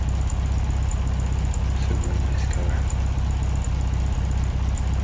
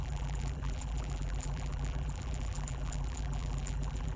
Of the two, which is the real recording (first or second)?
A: first